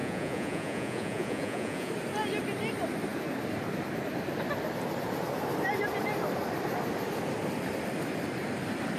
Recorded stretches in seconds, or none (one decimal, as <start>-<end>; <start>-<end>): 1.9-9.0